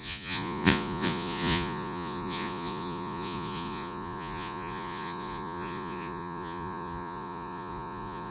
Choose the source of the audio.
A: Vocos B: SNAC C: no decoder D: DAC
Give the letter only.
A